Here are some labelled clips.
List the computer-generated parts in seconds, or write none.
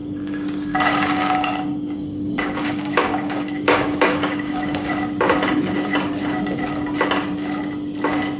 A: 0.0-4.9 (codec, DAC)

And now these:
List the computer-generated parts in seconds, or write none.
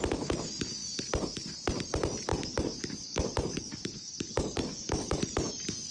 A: 2.3-5.2 (codec, DAC)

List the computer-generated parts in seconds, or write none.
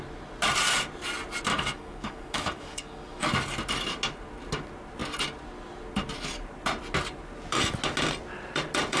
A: 1.5-3.3 (codec, DAC)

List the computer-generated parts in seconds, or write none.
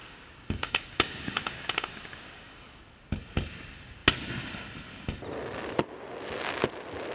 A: 0.0-2.8 (codec, DAC)